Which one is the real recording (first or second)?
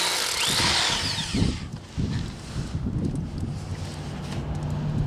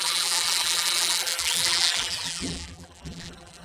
first